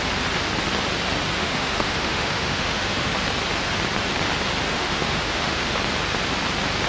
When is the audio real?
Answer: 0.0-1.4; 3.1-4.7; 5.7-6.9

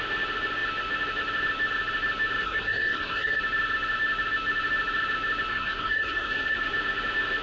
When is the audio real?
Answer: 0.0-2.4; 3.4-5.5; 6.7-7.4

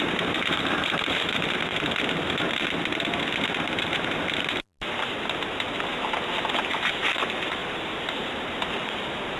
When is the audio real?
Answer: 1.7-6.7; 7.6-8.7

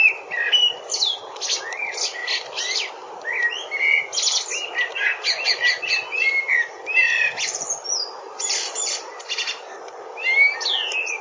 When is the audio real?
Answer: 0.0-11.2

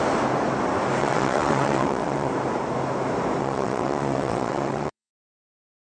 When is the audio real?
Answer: 0.0-1.0; 2.3-3.4; 5.1-5.9

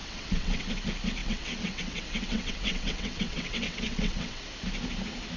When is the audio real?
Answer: 0.7-1.2; 4.4-5.4

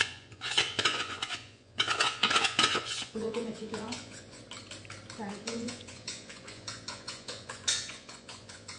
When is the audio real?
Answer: 4.4-5.3